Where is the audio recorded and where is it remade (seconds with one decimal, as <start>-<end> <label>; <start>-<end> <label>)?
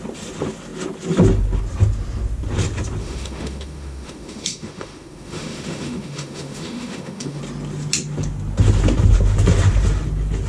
0.0-3.0 recorded; 3.0-7.4 remade; 7.4-10.5 recorded